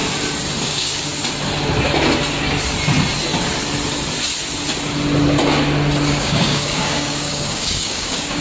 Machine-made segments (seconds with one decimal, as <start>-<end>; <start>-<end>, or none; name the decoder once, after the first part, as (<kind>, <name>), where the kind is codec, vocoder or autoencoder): 0.6-1.1 (codec, DAC); 6.1-8.4